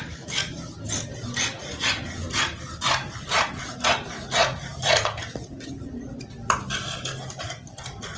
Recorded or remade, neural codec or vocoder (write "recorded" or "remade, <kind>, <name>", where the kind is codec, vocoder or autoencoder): recorded